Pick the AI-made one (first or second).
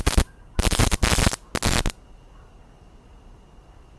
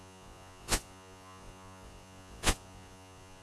second